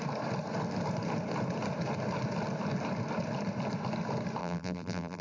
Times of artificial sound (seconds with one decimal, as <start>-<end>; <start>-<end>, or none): 4.4-5.2